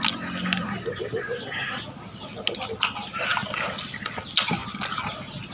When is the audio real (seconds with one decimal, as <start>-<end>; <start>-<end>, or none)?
0.0-5.5

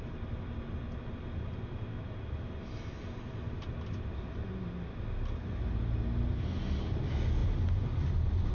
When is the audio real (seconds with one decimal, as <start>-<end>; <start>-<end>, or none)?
0.0-8.5

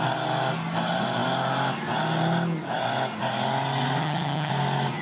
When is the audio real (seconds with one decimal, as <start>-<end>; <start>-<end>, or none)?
0.0-4.0; 4.5-5.0

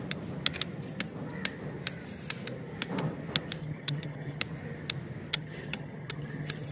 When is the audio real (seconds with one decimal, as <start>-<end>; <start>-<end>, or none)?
0.0-3.6; 4.4-5.3